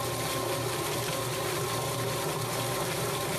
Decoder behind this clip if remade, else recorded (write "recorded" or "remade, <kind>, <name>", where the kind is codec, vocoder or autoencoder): recorded